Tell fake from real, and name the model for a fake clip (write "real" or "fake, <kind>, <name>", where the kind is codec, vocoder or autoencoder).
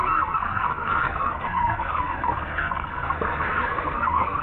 fake, codec, SNAC